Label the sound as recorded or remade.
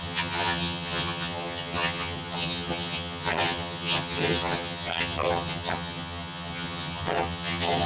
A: remade